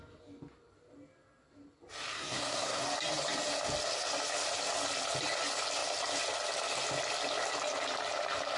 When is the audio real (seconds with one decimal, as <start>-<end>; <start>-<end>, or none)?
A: 0.0-2.1; 2.8-8.6